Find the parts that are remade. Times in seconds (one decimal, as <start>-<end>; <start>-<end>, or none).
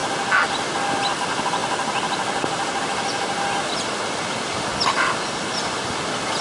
none